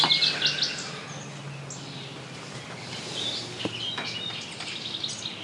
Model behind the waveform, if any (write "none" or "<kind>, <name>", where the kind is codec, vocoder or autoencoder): none